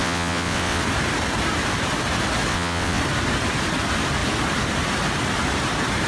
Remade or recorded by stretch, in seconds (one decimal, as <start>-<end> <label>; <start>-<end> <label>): 0.0-0.8 remade; 0.8-2.5 recorded; 2.5-3.0 remade; 3.0-6.1 recorded